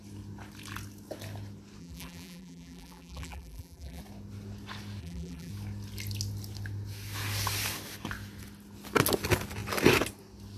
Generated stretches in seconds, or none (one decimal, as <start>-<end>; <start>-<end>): 1.8-4.0; 5.0-5.5